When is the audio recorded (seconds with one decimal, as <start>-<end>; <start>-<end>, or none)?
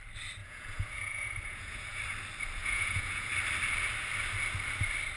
0.0-0.4; 2.0-2.6; 3.3-5.2